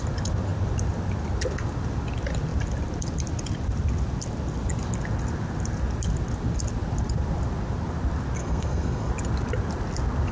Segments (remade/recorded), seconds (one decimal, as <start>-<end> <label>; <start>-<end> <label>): 0.0-8.4 recorded; 8.4-9.1 remade; 9.1-10.3 recorded